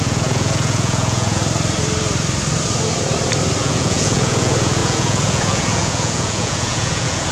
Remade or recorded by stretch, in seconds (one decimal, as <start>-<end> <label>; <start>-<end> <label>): 0.0-1.4 remade; 1.4-3.6 recorded; 3.6-7.3 remade